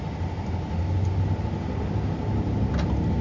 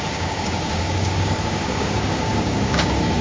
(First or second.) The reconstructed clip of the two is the second